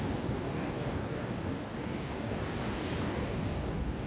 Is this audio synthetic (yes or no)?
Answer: yes